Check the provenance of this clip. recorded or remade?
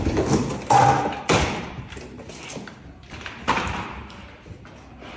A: remade